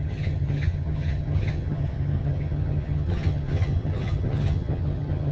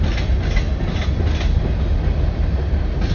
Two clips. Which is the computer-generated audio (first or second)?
first